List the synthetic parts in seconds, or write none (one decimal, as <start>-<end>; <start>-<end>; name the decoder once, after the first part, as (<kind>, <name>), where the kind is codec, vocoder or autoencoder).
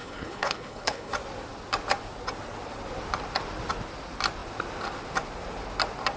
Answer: 0.0-1.1 (codec, HILCodec)